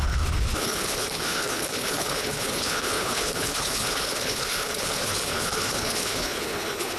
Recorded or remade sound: remade